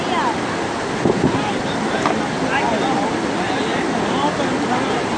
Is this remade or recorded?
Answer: recorded